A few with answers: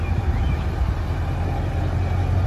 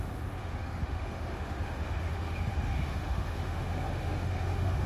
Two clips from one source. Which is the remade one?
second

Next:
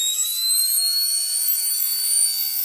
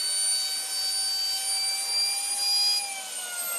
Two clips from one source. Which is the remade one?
first